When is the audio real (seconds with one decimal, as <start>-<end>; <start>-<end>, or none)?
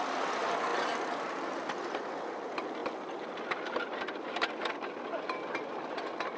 0.0-6.4